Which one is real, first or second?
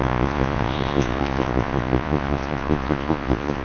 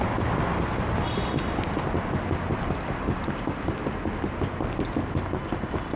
second